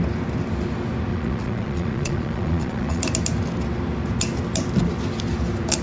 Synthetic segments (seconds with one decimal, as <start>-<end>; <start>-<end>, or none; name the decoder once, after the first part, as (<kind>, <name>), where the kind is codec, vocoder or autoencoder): 1.1-3.0 (vocoder, Vocos)